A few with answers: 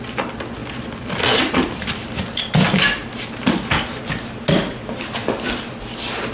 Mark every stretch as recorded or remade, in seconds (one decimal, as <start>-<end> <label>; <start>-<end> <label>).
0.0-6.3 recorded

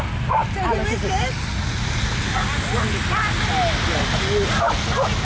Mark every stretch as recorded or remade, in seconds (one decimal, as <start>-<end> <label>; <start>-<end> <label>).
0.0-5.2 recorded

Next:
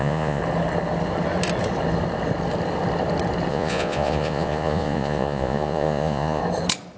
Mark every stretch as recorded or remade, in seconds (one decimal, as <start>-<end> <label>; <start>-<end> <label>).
0.0-0.4 remade; 0.4-3.5 recorded; 3.5-6.4 remade; 6.4-7.0 recorded

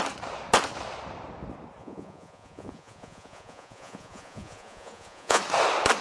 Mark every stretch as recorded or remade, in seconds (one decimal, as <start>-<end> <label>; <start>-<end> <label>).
0.0-1.8 recorded; 1.8-5.4 remade; 5.4-6.0 recorded